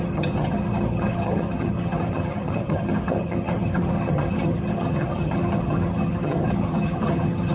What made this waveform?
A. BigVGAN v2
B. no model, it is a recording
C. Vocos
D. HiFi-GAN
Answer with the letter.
D